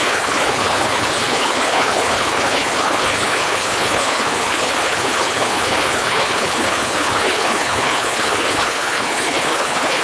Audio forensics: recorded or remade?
remade